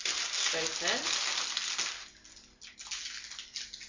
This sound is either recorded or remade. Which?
recorded